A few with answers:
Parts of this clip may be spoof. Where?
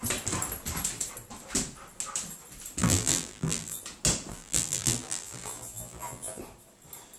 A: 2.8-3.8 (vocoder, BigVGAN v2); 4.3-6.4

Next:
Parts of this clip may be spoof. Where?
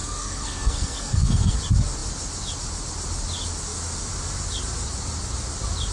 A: 0.0-1.6 (codec, SNAC)